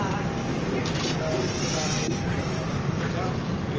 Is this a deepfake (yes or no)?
no